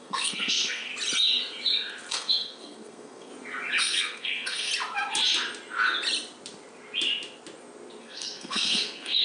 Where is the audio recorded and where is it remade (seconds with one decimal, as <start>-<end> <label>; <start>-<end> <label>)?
0.0-0.9 remade; 0.9-2.1 recorded; 2.1-3.3 remade; 3.3-3.8 recorded; 3.8-4.7 remade; 4.7-8.0 recorded; 8.0-9.2 remade